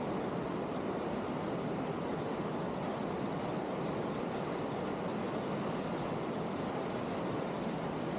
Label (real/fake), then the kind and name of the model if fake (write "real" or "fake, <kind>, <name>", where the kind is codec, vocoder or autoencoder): real